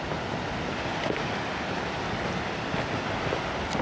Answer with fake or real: real